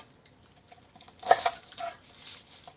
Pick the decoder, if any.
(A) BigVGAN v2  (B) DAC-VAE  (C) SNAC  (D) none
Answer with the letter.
D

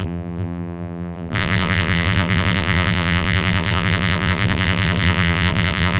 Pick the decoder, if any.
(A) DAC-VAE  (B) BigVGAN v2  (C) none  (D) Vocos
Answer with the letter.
B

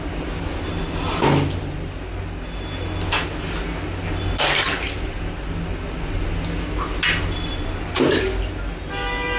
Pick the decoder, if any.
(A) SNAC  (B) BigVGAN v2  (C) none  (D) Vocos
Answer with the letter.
C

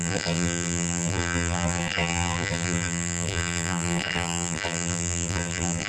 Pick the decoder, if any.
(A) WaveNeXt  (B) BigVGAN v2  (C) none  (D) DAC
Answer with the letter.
B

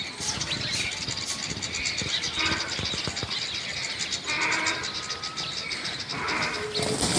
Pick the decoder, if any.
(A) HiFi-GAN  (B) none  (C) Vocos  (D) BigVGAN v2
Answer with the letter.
B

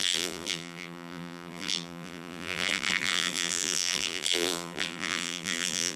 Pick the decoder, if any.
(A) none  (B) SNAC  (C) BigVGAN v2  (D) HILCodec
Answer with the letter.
C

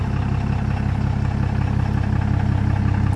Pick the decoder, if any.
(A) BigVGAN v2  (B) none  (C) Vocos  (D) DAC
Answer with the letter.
B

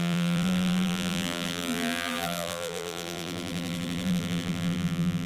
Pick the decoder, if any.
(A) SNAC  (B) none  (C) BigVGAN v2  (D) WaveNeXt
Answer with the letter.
C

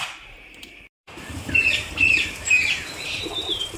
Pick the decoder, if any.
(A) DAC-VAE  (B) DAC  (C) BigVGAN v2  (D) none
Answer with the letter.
C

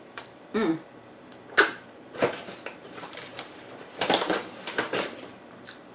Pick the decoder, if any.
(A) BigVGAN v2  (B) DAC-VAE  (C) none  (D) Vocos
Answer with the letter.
A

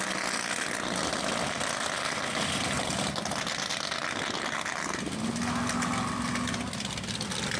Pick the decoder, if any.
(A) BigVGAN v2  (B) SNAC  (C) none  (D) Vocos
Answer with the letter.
C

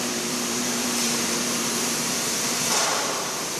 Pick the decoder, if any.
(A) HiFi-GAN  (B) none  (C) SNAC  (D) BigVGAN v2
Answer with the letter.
D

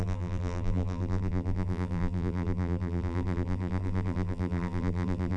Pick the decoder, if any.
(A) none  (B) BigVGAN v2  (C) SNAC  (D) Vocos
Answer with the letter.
B